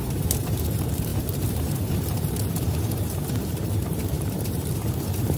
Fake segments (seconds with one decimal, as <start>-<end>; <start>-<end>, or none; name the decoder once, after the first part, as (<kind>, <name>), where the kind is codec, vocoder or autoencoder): 0.0-5.4 (vocoder, BigVGAN v2)